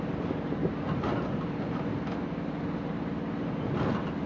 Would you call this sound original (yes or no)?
yes